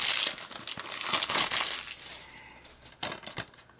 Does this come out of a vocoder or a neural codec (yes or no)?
no